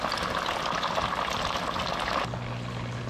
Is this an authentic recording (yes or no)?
yes